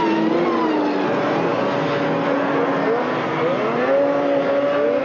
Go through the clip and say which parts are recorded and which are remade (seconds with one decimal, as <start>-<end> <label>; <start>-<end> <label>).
0.0-5.0 recorded